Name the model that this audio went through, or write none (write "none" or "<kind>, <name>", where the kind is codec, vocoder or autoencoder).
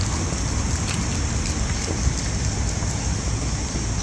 none